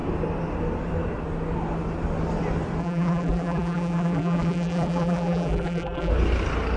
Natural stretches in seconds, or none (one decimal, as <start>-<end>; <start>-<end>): 0.0-2.8; 6.1-6.8